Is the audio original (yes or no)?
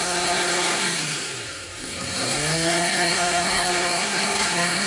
no